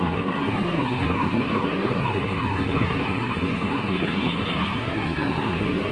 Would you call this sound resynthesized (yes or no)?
yes